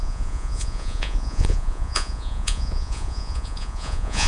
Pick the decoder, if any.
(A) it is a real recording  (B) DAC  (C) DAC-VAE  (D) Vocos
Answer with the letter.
D